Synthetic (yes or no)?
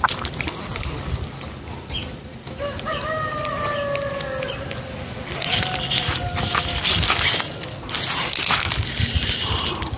no